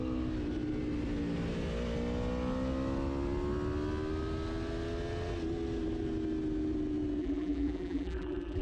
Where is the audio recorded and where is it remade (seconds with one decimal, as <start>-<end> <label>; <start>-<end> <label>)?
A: 0.0-7.2 recorded; 7.2-8.6 remade